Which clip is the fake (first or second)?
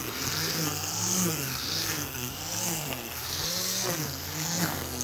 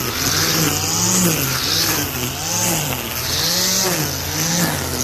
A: first